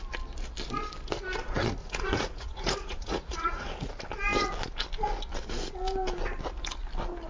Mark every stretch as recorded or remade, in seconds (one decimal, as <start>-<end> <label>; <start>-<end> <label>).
0.0-1.8 recorded; 1.8-3.9 remade; 3.9-7.3 recorded